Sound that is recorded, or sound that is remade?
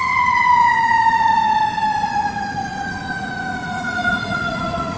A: remade